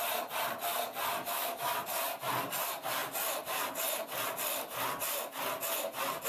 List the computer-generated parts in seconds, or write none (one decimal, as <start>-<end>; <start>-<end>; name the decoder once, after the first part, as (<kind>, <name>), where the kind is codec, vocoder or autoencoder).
1.1-1.7 (autoencoder, DAC-VAE)